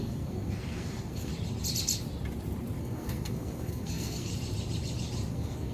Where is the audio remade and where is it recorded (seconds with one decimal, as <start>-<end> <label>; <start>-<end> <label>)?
0.0-1.3 remade; 1.3-2.8 recorded; 2.8-4.3 remade; 4.3-5.3 recorded; 5.3-5.7 remade